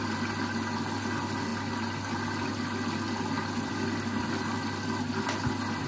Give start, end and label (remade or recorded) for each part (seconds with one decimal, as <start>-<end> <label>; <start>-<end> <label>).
0.0-5.9 recorded